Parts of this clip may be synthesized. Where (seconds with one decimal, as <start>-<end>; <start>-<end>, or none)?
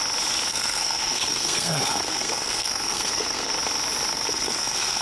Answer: 0.5-3.5; 4.1-5.0